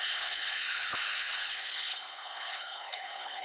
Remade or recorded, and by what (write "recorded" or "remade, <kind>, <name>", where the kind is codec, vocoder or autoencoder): remade, codec, HILCodec